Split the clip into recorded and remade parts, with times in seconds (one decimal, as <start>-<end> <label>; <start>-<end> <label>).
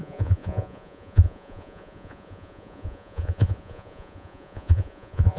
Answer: 0.0-5.4 remade